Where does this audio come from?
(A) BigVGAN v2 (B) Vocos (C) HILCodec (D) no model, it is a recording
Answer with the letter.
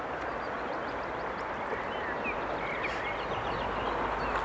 D